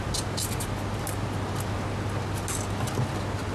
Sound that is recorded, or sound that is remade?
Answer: recorded